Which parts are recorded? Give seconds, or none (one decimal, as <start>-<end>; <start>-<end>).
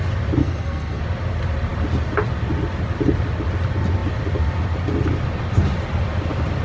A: 0.0-0.4; 1.0-6.6